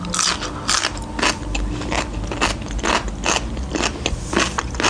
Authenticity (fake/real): real